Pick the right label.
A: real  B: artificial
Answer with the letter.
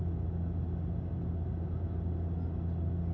A